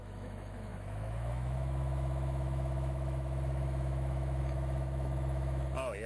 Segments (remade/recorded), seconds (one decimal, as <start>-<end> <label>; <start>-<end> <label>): 0.0-6.1 remade